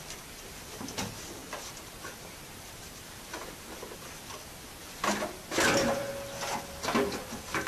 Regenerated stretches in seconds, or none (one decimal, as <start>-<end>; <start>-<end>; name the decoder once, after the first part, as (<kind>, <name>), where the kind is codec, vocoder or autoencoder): none